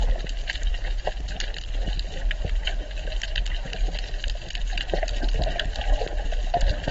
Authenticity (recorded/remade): recorded